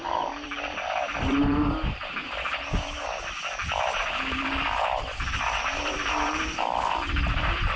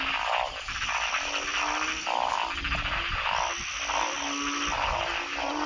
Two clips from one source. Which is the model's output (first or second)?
first